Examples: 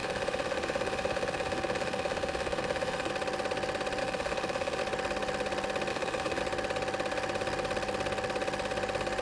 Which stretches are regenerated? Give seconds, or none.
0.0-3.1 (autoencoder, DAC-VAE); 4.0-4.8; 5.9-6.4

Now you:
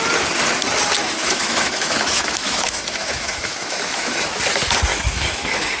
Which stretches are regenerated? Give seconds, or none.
1.0-4.4 (autoencoder, DAC-VAE); 4.9-5.8

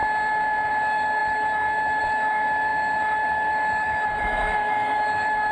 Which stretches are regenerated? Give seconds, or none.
0.7-5.5 (autoencoder, DAC-VAE)

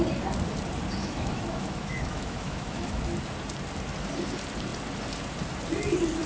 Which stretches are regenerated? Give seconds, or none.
1.0-3.0 (autoencoder, DAC-VAE)

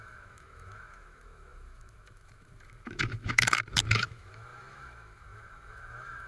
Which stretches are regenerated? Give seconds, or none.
0.0-6.3 (autoencoder, DAC-VAE)

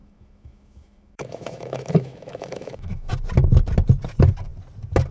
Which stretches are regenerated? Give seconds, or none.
0.0-3.1 (autoencoder, DAC-VAE)

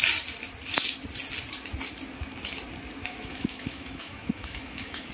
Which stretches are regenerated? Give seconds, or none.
3.0-5.1 (autoencoder, DAC-VAE)